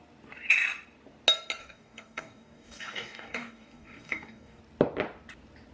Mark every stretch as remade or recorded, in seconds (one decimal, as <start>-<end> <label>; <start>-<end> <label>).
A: 0.0-1.6 recorded; 1.6-4.6 remade; 4.6-5.7 recorded